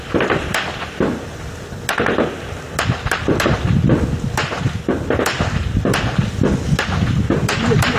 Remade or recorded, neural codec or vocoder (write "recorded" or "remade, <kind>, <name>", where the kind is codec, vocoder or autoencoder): recorded